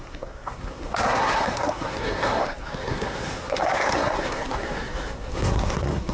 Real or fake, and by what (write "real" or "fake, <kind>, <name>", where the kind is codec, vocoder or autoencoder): fake, codec, SNAC